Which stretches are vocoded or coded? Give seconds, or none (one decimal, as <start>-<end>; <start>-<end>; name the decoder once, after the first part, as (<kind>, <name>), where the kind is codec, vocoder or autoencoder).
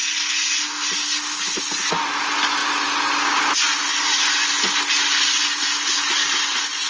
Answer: none